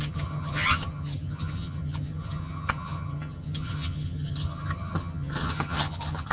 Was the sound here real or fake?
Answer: fake